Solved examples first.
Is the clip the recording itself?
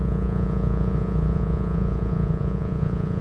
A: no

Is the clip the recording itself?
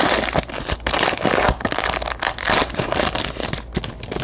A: yes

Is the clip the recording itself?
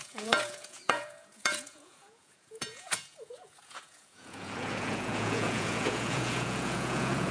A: no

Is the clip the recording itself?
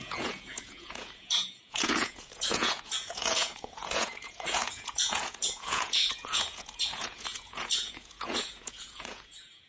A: no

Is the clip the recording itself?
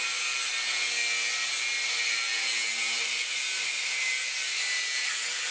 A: yes